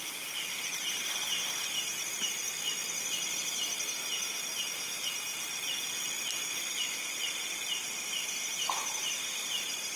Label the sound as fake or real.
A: real